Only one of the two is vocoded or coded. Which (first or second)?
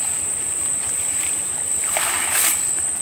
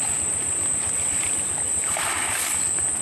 first